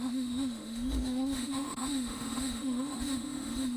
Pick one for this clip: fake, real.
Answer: fake